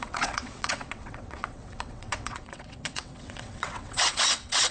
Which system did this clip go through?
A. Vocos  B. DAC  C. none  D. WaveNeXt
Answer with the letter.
D